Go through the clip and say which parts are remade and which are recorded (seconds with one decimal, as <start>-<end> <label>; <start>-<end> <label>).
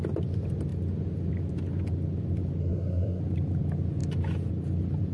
0.0-2.6 recorded; 2.6-3.2 remade; 3.2-5.1 recorded